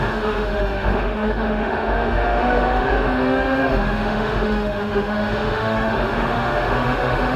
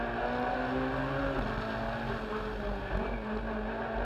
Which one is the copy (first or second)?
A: first